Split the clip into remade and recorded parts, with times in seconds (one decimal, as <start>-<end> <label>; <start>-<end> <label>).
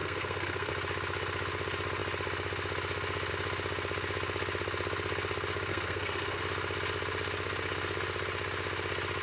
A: 0.0-0.7 remade; 0.7-5.7 recorded; 5.7-6.4 remade; 6.4-9.2 recorded